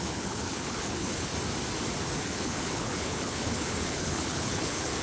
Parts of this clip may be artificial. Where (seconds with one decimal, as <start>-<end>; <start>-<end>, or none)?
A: 0.0-1.3; 2.1-5.0